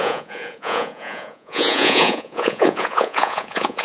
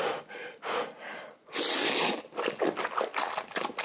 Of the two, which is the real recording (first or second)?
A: second